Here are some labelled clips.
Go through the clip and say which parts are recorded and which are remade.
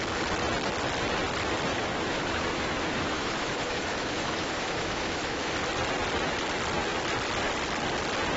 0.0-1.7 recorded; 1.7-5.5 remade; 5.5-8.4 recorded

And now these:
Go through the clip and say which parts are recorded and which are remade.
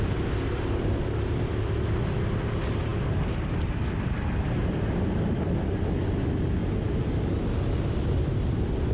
0.0-6.6 recorded; 6.6-7.2 remade; 7.2-8.9 recorded